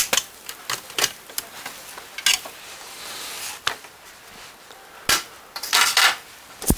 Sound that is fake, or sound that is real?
real